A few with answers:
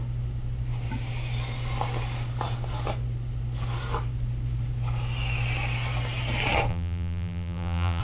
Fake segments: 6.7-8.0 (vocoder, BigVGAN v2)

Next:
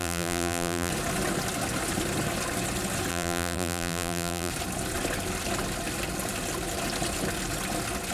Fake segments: 0.0-0.9 (vocoder, BigVGAN v2); 3.1-4.5

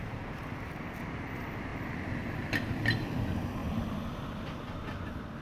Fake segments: 0.0-1.7 (vocoder, BigVGAN v2); 2.6-5.4

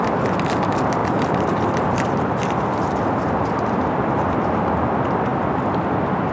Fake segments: 1.0-4.7 (vocoder, BigVGAN v2)

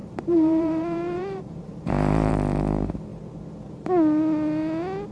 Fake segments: 0.0-2.3 (vocoder, BigVGAN v2)